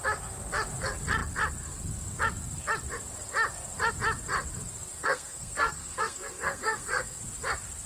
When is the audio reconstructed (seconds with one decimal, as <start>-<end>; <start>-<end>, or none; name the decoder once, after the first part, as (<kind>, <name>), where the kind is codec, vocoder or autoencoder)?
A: 4.9-7.2 (codec, SNAC)